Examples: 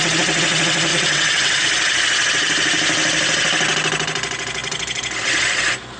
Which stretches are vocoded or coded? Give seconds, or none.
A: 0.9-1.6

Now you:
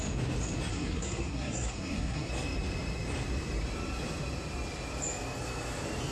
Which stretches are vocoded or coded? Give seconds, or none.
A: 0.7-2.3

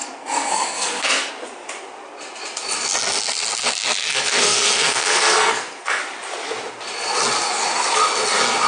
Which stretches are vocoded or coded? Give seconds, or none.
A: 0.0-1.3; 4.1-6.0

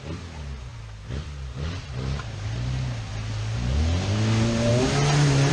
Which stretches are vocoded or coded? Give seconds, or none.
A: none

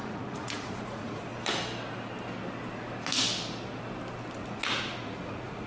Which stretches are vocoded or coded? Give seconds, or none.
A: 0.0-1.3; 4.4-5.7

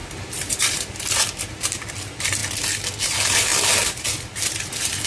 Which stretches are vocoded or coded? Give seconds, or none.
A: 0.0-2.4; 3.0-3.5; 4.1-5.1

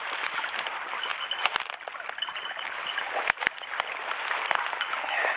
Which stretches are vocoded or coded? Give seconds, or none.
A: none

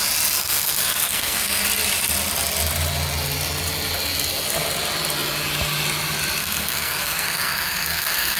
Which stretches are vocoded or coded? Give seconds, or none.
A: 0.4-1.6; 6.4-8.4